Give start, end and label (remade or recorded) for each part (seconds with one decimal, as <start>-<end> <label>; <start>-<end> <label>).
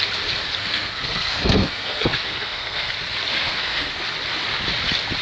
0.0-0.6 recorded; 0.6-2.9 remade; 2.9-3.3 recorded; 3.3-3.9 remade; 3.9-5.2 recorded